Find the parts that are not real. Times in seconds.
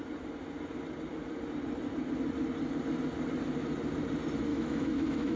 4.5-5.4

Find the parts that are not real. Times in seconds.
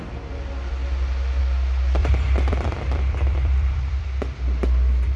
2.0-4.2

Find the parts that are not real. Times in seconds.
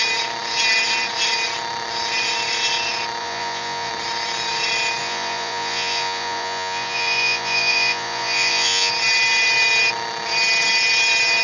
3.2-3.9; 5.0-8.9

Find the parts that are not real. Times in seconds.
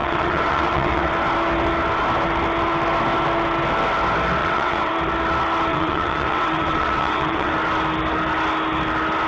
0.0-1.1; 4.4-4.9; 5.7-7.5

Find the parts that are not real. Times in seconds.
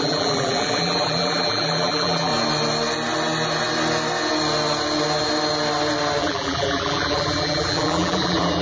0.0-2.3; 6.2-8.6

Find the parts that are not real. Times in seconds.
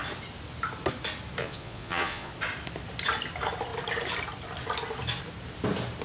1.4-2.3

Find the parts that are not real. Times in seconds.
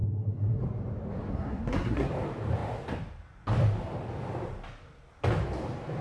0.0-0.6; 1.3-2.1